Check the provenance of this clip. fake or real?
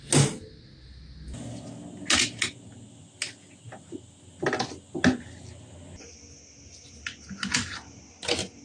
real